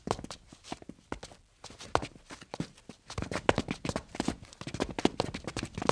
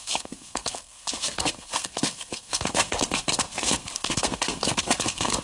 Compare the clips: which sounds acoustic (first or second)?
first